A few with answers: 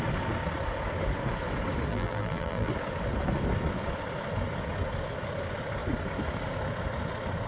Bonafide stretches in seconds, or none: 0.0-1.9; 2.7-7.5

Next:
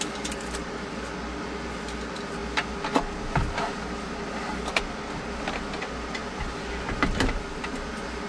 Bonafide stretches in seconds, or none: 0.0-8.3